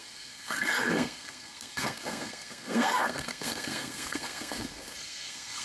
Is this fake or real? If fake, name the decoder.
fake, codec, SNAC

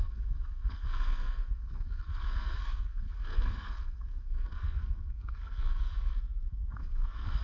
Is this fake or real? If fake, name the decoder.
fake, codec, SNAC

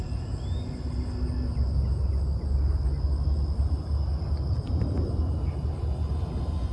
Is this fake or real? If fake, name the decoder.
real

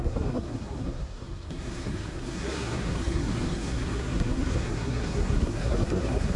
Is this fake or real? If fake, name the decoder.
fake, codec, SNAC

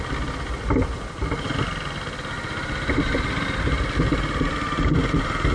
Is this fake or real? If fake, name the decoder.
real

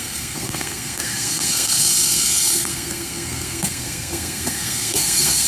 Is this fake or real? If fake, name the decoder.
fake, codec, SNAC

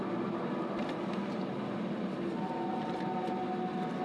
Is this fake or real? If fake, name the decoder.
real